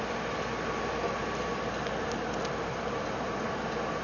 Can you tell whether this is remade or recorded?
recorded